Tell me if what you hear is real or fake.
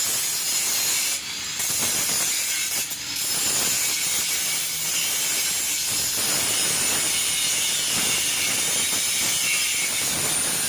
real